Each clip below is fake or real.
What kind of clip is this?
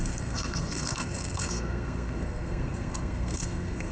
fake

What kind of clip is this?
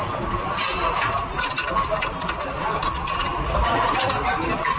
real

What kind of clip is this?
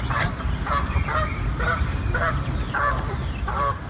fake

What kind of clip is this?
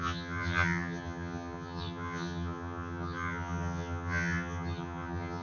fake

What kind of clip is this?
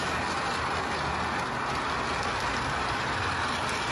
real